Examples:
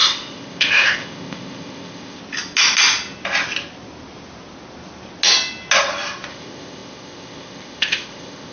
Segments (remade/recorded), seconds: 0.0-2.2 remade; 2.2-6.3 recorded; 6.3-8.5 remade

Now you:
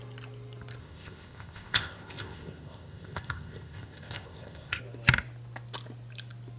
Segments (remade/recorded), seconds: 0.0-0.8 recorded; 0.8-4.8 remade; 4.8-6.6 recorded

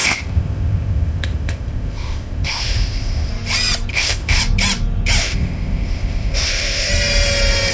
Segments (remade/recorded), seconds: 0.0-3.3 remade; 3.3-3.9 recorded; 3.9-4.4 remade; 4.4-5.2 recorded; 5.2-6.9 remade; 6.9-7.7 recorded

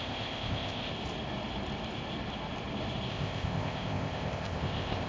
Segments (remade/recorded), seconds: 0.0-0.9 remade; 0.9-3.1 recorded; 3.1-5.1 remade

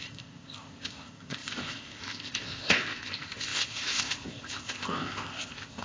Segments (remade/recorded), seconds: 0.0-5.8 remade

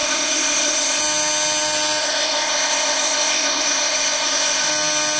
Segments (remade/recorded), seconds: 0.0-1.0 remade; 1.0-2.0 recorded; 2.0-4.7 remade; 4.7-5.2 recorded

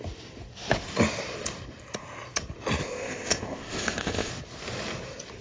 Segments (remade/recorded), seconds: 0.0-2.8 recorded; 2.8-4.3 remade; 4.3-5.4 recorded